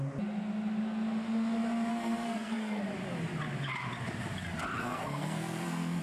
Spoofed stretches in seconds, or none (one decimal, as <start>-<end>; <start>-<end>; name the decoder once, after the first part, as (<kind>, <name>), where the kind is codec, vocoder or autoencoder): 1.9-2.8 (codec, SNAC); 4.7-6.0